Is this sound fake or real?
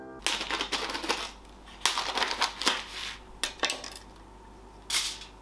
real